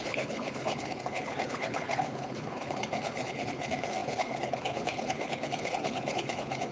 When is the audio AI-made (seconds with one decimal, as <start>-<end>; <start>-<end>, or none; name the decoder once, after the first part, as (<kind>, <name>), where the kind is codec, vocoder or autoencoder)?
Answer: 0.0-6.7 (codec, HILCodec)